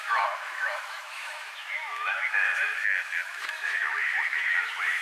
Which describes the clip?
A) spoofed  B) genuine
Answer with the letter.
A